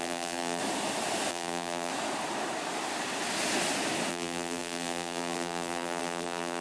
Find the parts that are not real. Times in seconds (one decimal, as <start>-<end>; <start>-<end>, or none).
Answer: 0.0-0.6; 1.3-1.9; 4.1-6.6